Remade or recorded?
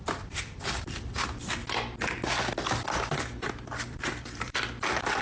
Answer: recorded